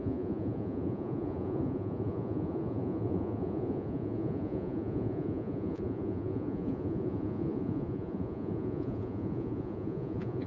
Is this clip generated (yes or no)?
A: yes